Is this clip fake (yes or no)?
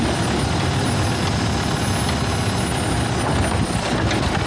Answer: no